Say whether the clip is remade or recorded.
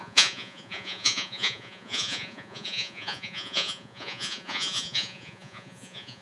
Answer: remade